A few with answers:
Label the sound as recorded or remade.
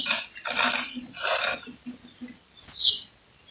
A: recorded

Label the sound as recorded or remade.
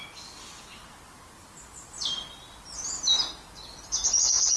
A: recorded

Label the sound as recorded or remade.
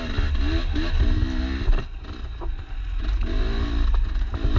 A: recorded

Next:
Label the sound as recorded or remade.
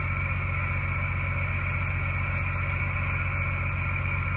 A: recorded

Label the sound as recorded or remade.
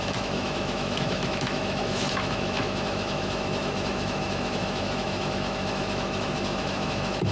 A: remade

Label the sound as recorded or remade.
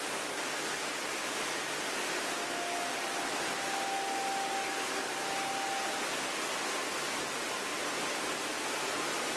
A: recorded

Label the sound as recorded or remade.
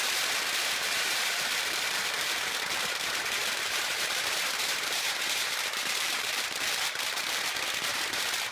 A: remade